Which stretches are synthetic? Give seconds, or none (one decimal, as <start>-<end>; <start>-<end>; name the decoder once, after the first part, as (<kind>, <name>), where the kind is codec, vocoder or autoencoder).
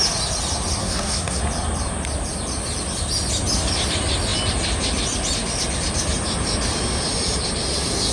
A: 0.8-1.4 (codec, SNAC)